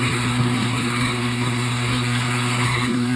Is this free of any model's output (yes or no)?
no